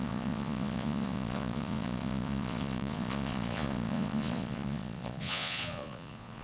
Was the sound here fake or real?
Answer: fake